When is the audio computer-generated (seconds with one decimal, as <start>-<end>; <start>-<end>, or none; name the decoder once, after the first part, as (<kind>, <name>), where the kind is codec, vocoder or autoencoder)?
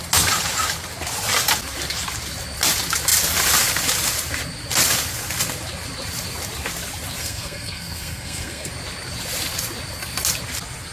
7.2-8.7 (codec, SNAC)